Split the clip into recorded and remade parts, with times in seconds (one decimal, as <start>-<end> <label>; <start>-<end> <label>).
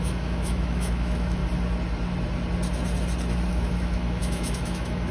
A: 0.0-1.4 remade; 1.4-3.5 recorded; 3.5-5.1 remade